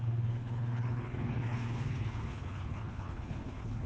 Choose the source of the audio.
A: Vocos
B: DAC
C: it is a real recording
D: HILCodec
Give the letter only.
D